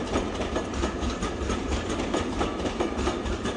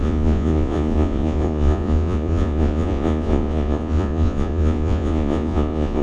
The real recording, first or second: first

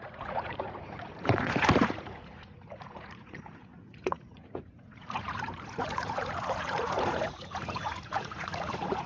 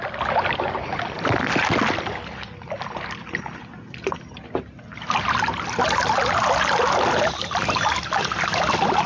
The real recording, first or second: second